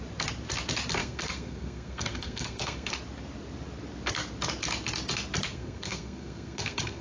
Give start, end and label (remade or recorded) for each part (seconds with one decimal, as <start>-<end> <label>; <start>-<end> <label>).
0.0-1.0 recorded; 1.0-2.9 remade; 2.9-5.5 recorded; 5.5-7.0 remade